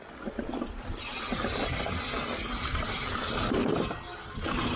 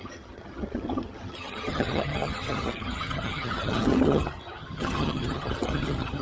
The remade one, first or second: second